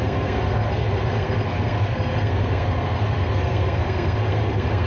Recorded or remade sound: remade